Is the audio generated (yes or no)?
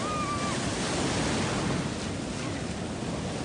no